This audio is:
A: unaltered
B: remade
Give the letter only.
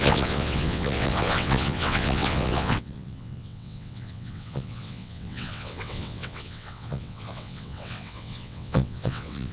B